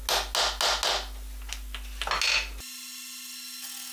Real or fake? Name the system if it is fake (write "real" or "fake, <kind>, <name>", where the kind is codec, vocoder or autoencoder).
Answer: real